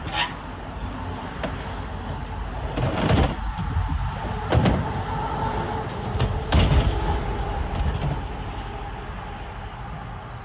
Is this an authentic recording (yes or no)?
yes